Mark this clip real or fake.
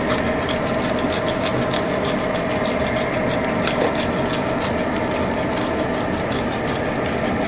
real